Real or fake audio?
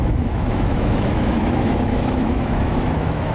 fake